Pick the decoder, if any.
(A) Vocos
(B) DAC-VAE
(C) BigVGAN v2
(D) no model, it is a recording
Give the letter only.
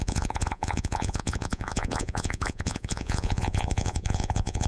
A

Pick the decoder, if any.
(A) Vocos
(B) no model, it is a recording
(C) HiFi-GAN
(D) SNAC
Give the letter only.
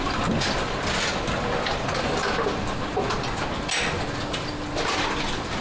B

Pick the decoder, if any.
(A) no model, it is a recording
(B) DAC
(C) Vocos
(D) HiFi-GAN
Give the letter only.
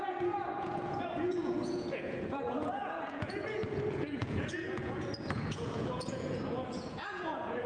C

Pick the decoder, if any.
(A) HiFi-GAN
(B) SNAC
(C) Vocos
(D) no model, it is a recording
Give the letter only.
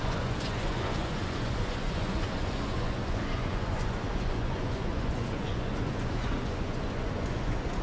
C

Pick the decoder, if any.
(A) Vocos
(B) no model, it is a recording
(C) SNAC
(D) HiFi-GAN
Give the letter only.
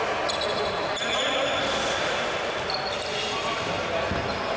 B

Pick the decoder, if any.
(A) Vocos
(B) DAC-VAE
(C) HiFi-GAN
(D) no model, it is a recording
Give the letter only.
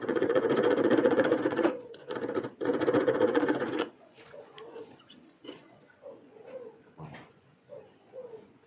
A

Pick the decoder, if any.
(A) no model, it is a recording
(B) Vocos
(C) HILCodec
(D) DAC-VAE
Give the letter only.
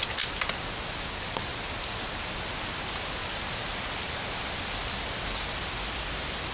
A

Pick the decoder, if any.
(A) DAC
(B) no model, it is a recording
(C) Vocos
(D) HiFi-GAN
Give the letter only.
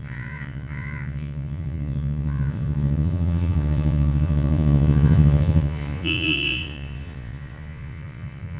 C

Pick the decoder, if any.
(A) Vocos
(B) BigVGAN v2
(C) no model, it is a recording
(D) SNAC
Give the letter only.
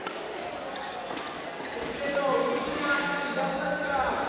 C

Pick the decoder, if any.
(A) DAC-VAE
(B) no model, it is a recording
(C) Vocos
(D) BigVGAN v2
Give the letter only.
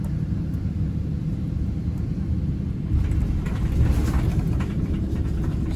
B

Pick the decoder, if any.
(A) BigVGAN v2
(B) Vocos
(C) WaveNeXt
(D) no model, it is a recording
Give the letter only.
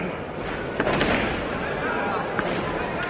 D